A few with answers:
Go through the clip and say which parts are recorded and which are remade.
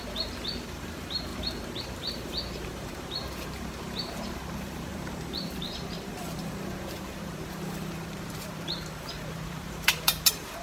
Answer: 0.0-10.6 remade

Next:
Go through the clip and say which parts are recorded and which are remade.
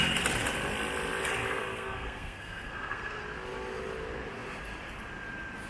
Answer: 0.0-1.6 recorded; 1.6-3.2 remade; 3.2-5.7 recorded